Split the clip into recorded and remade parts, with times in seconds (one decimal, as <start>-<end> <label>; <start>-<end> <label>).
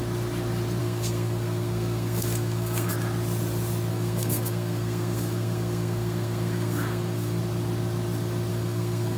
0.0-0.8 recorded; 0.8-2.9 remade; 2.9-3.9 recorded; 3.9-7.4 remade; 7.4-8.5 recorded; 8.5-9.2 remade